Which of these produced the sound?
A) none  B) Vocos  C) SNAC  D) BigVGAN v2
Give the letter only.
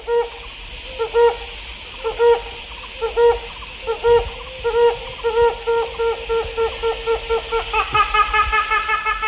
A